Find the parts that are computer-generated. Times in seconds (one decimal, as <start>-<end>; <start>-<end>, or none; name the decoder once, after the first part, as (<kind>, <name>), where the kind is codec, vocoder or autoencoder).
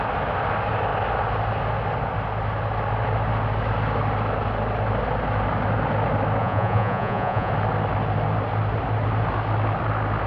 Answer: 6.4-7.5 (vocoder, Vocos)